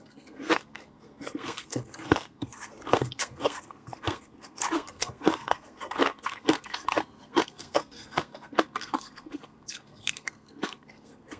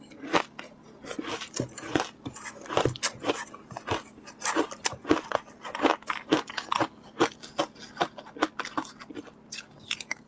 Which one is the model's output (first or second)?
first